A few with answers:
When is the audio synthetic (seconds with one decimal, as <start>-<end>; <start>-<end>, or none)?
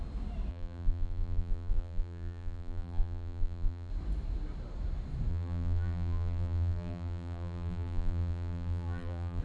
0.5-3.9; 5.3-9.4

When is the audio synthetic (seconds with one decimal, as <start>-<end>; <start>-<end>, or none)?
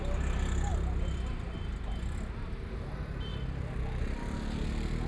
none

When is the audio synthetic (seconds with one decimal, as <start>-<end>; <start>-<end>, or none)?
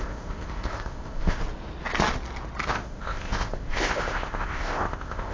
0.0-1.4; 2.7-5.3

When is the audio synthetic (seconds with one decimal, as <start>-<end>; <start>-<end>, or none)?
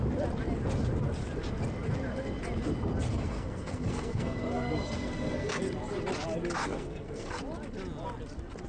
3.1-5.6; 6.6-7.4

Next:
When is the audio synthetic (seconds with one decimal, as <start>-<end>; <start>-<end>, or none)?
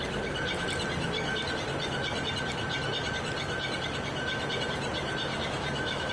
5.3-6.1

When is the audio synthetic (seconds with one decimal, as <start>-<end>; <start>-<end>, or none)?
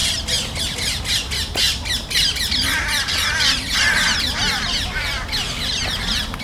0.0-1.0